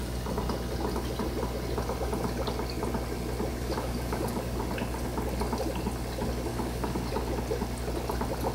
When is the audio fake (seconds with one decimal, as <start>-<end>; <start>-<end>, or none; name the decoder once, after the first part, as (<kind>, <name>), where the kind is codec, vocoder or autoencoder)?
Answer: 3.5-4.6 (codec, DAC); 6.5-7.1